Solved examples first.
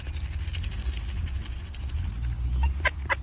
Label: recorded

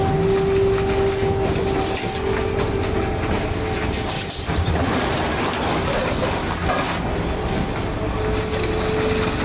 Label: recorded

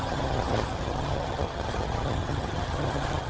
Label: remade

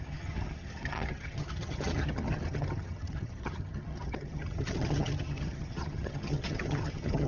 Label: remade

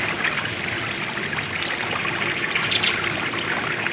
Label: recorded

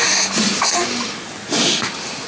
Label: recorded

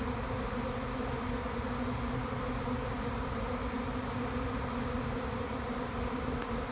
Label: recorded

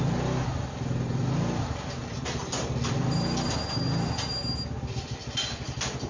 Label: recorded